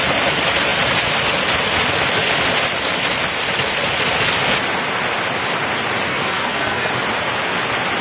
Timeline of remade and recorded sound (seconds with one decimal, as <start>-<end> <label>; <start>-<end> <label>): 0.0-6.1 recorded; 6.1-6.9 remade; 6.9-8.0 recorded